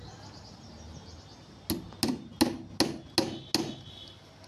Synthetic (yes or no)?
no